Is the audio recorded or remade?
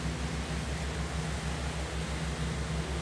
recorded